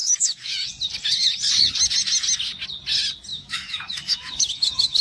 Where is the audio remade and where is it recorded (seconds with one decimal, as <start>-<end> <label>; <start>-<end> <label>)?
0.0-0.7 remade; 0.7-3.3 recorded; 3.3-5.0 remade